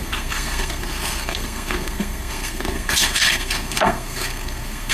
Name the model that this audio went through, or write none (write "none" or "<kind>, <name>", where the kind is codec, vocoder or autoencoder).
codec, SNAC